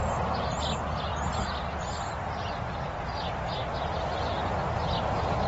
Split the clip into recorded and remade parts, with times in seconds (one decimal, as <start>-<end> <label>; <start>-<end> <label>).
0.0-5.5 recorded